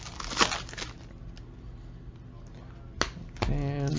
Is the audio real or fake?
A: real